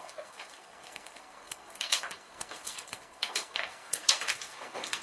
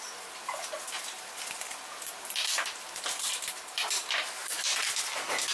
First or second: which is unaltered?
second